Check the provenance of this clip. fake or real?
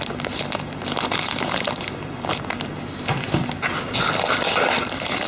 real